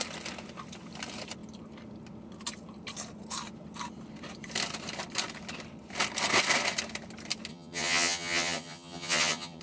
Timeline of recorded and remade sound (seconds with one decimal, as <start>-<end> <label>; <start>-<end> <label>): 0.0-7.5 recorded; 7.5-9.6 remade